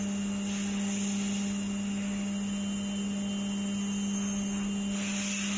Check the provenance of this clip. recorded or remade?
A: recorded